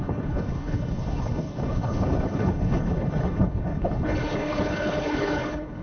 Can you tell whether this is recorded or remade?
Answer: remade